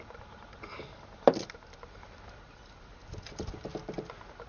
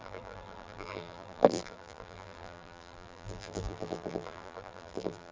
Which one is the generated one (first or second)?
second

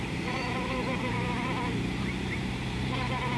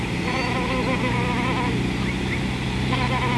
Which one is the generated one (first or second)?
first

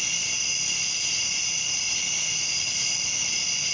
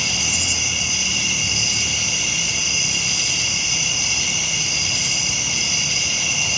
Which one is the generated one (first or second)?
second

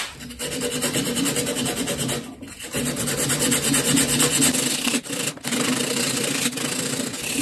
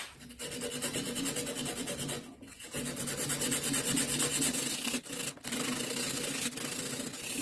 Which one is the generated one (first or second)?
first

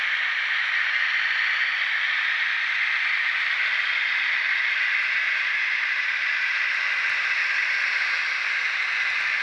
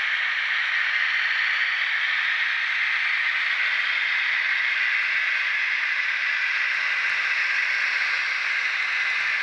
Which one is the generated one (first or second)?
first